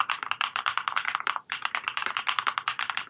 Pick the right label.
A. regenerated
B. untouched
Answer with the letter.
A